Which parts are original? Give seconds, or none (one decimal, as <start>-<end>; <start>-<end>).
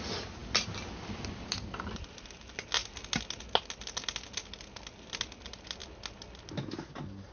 0.0-7.3